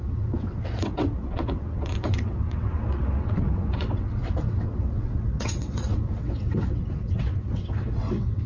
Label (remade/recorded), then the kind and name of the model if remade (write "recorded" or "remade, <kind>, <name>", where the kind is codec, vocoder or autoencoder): remade, vocoder, WaveNeXt